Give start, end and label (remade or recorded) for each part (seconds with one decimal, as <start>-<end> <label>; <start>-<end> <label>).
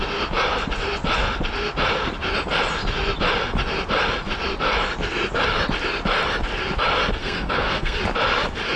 0.0-7.2 recorded; 7.2-8.0 remade; 8.0-8.8 recorded